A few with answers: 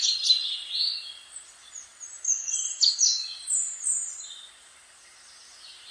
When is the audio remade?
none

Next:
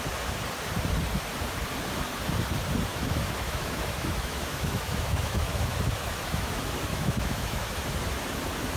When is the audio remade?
2.9-6.5 (autoencoder, DAC-VAE); 6.9-7.8